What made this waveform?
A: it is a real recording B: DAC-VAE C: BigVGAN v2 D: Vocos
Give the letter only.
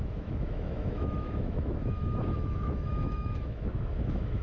B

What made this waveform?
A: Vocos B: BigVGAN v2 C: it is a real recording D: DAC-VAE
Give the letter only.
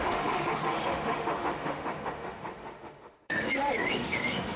D